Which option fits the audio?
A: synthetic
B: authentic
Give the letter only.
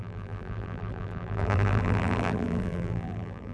A